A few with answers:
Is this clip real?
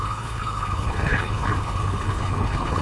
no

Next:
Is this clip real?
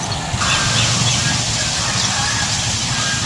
yes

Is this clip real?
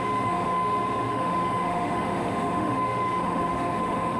no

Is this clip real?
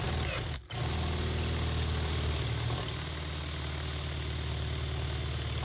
yes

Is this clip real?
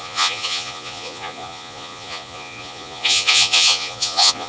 no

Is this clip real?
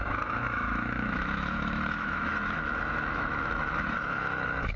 no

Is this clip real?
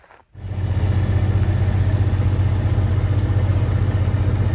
yes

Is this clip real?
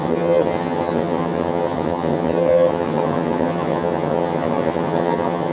no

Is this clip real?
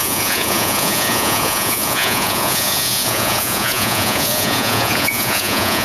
no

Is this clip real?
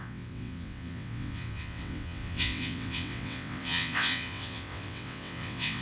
no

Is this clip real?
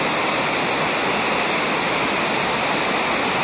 yes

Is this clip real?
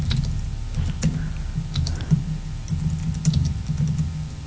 yes